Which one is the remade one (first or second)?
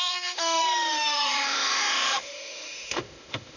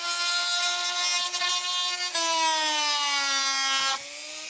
first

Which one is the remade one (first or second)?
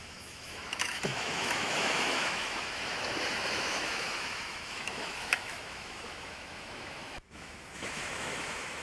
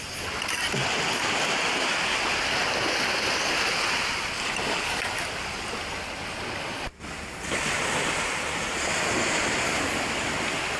first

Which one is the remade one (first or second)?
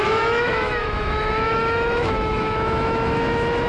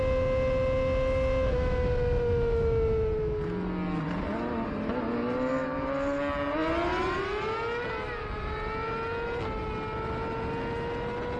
first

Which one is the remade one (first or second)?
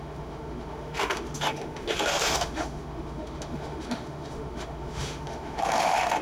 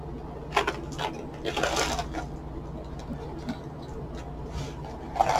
first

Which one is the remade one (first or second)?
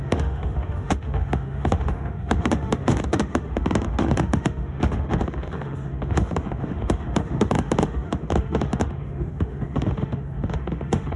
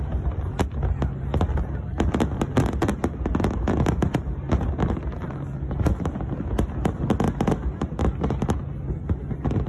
first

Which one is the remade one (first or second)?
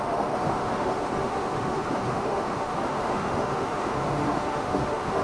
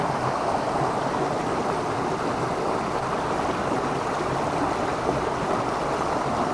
first